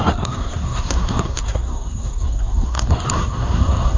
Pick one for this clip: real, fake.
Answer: fake